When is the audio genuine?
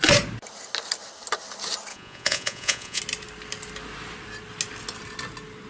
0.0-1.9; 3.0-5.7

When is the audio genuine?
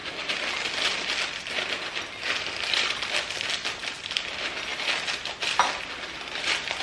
0.0-6.8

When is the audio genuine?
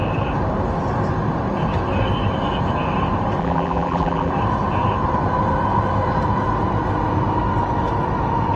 0.0-3.4; 4.3-8.6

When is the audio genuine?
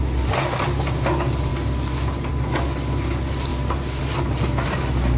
0.0-5.2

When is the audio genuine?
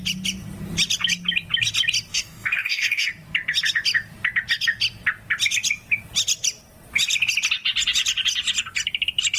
0.0-2.1; 3.1-9.4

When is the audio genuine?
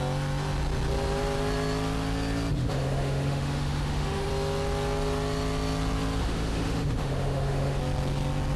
0.0-2.6; 4.3-6.2; 7.8-8.6